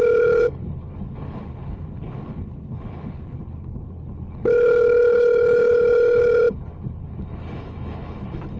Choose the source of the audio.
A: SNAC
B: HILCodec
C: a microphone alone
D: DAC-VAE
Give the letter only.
B